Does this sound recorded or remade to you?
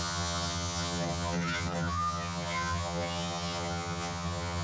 remade